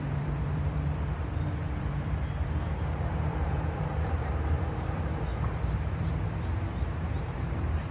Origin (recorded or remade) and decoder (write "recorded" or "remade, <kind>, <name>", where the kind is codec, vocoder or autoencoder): remade, vocoder, BigVGAN v2